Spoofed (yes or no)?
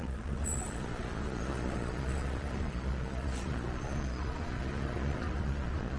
yes